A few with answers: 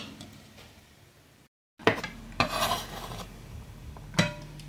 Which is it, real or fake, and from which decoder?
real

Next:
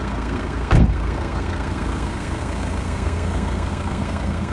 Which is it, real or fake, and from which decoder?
fake, codec, SNAC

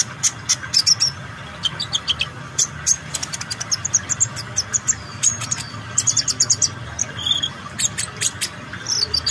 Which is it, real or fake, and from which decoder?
fake, vocoder, BigVGAN v2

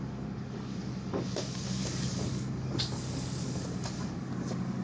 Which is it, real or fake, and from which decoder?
fake, codec, DAC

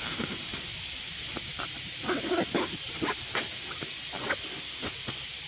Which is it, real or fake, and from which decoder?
real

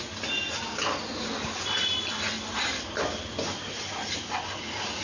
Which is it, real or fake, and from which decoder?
real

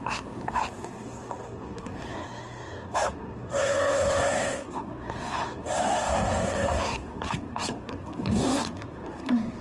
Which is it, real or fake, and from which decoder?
fake, codec, SNAC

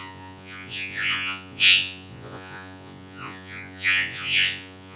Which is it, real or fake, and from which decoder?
fake, vocoder, Vocos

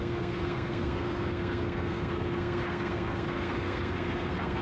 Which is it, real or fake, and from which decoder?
fake, codec, SNAC